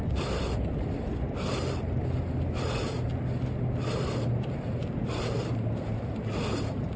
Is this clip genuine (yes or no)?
yes